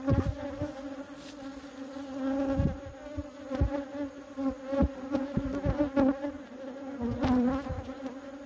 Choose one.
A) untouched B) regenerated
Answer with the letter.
A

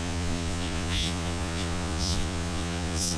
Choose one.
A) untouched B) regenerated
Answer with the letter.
B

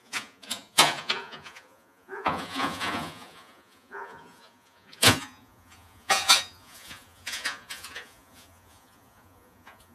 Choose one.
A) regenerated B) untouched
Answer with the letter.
A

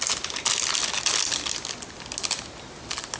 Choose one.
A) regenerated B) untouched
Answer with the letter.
B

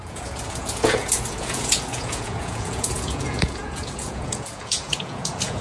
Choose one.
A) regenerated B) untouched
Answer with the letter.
A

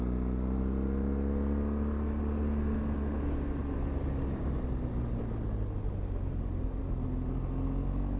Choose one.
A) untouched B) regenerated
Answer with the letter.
A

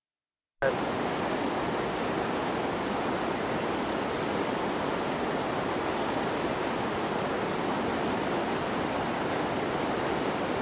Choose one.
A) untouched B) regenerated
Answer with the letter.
A